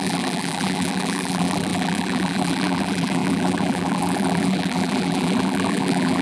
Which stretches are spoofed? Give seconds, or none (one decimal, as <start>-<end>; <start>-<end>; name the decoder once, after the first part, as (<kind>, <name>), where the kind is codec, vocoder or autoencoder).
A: 0.0-6.2 (vocoder, BigVGAN v2)